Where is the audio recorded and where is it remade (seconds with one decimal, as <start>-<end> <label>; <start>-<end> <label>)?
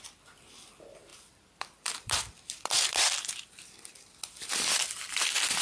0.0-1.1 recorded; 1.1-4.5 remade; 4.5-5.6 recorded